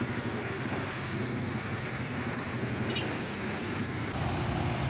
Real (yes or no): yes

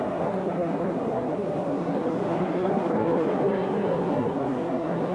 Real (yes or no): no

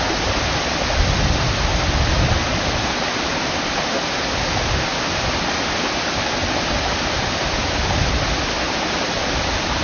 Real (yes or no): yes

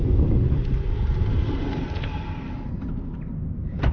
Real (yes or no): yes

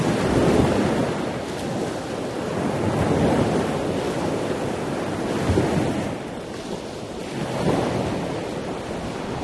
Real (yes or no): yes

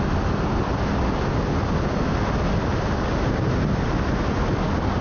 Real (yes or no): yes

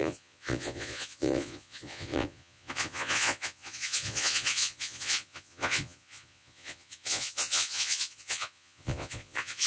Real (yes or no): no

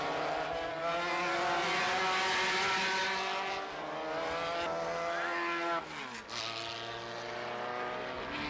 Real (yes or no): yes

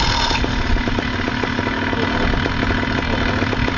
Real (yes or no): yes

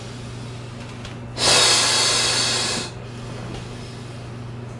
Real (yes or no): yes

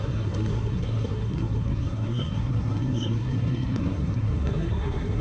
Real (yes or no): no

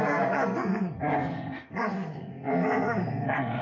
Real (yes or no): no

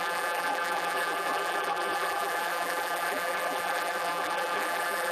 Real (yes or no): no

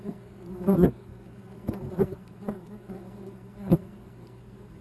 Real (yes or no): no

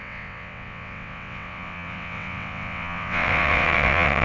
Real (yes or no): no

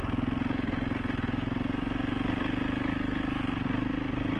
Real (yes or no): yes